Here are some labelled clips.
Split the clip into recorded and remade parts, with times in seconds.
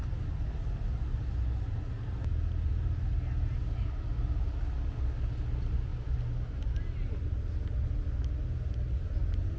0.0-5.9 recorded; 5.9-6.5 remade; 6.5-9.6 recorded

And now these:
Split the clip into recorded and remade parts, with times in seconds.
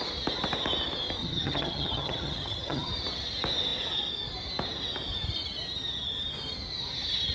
0.0-1.2 recorded; 1.2-2.9 remade; 2.9-7.3 recorded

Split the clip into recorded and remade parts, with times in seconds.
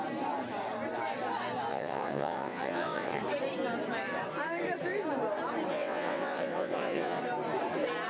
0.0-1.7 recorded; 1.7-3.2 remade; 3.2-5.7 recorded; 5.7-7.2 remade; 7.2-8.1 recorded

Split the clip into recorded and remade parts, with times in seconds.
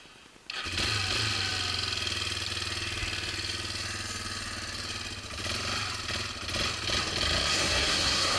0.0-7.5 recorded; 7.5-8.4 remade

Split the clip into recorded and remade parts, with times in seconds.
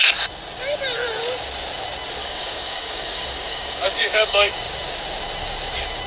0.0-2.2 recorded; 2.2-4.5 remade; 4.5-6.1 recorded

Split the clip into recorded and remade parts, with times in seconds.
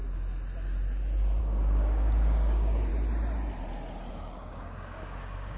0.0-1.4 recorded; 1.4-2.9 remade; 2.9-4.1 recorded; 4.1-5.6 remade